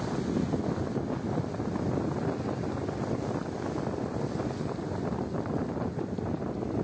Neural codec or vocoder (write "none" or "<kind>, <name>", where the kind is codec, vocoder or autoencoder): none